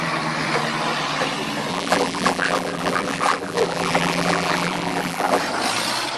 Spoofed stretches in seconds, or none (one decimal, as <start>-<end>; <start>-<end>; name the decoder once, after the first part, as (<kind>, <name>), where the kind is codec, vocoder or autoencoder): 1.7-5.4 (vocoder, BigVGAN v2)